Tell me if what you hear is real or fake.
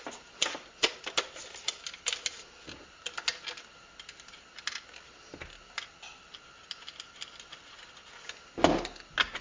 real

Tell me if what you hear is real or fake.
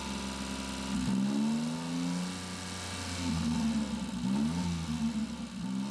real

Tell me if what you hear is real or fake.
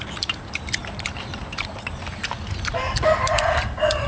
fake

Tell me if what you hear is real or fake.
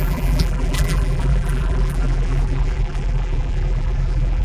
fake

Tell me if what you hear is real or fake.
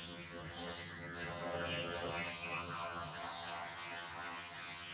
fake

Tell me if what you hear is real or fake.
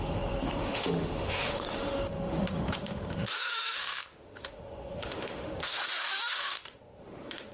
fake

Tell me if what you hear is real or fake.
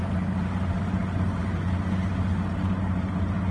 real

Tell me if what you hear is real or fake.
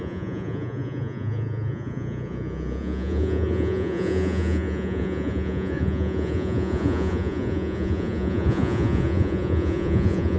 fake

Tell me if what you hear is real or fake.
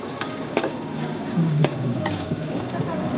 fake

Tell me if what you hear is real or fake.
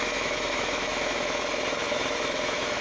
fake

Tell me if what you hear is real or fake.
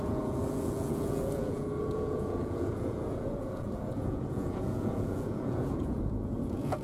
fake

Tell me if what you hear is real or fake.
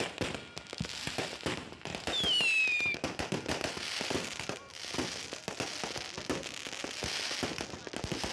real